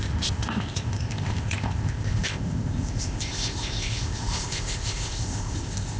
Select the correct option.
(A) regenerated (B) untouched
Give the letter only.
A